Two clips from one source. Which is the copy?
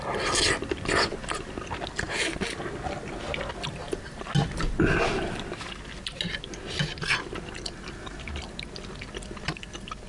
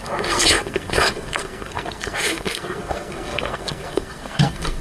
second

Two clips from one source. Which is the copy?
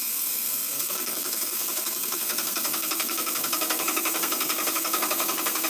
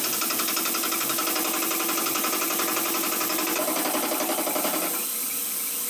first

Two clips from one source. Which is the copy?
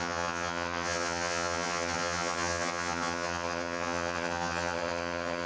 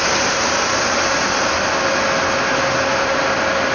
first